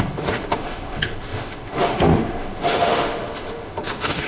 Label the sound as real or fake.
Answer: fake